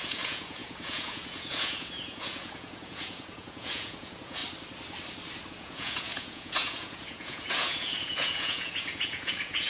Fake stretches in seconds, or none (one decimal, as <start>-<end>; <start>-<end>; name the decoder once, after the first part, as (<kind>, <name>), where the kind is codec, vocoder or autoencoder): 0.0-4.4 (vocoder, Vocos); 5.5-9.7